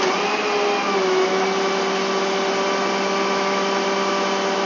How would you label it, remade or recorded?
recorded